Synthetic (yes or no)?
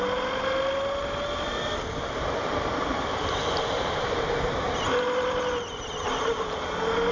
no